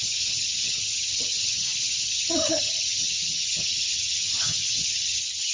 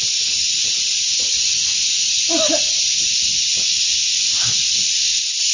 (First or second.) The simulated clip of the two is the first